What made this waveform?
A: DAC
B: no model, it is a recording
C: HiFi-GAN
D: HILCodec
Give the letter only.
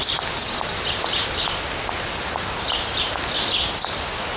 B